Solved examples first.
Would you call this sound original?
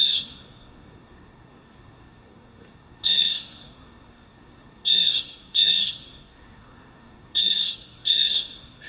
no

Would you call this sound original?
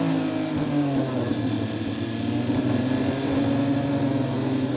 yes